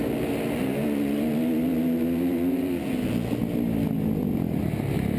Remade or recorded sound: recorded